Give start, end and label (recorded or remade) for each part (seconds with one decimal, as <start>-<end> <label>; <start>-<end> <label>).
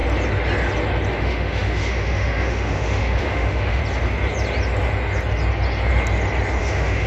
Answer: 0.0-1.1 recorded; 1.1-3.8 remade; 3.8-6.6 recorded; 6.6-7.1 remade